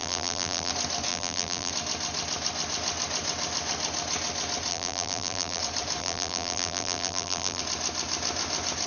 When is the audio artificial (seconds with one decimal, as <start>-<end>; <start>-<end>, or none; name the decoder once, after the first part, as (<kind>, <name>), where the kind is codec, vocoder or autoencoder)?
0.0-0.7 (vocoder, BigVGAN v2); 1.1-1.7; 4.7-5.6; 6.0-7.6